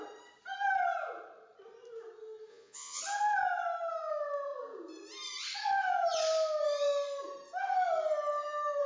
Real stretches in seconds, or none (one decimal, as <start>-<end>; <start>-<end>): 0.0-2.5; 3.0-8.9